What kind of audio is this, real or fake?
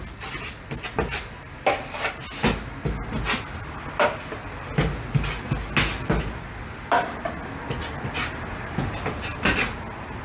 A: real